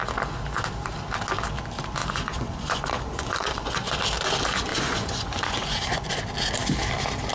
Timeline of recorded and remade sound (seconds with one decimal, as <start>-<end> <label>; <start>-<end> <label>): 0.0-2.0 recorded; 2.0-3.9 remade; 3.9-4.7 recorded; 4.7-6.1 remade; 6.1-7.3 recorded